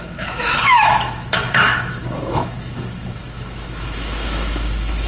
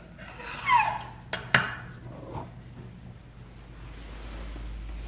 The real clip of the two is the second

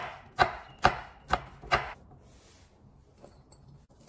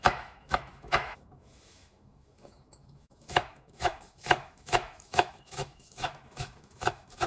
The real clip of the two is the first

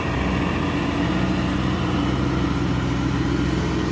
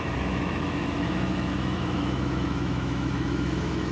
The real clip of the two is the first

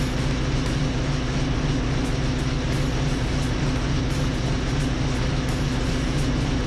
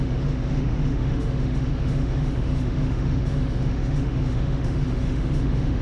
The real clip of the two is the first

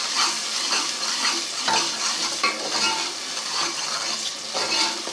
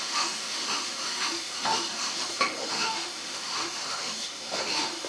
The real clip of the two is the first